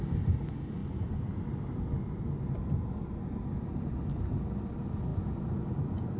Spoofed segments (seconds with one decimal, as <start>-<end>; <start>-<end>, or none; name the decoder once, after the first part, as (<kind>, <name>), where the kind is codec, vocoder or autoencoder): none